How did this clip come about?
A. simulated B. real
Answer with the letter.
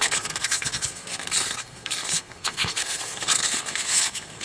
A